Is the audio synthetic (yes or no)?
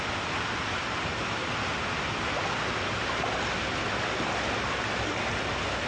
no